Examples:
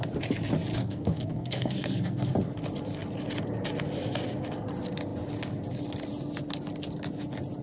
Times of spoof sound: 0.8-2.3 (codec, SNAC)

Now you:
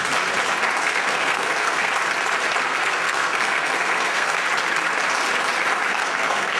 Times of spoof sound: 0.8-1.9 (codec, SNAC); 2.6-4.4; 5.9-6.6

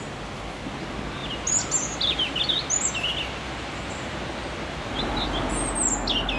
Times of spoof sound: none

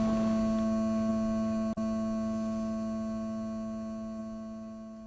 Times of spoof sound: none

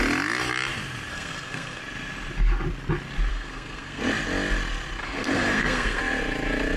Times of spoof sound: 1.1-1.8 (codec, SNAC); 3.3-4.0; 5.0-6.0

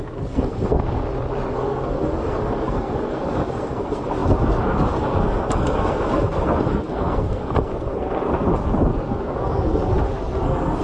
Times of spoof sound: 0.0-1.0 (codec, SNAC); 1.5-10.8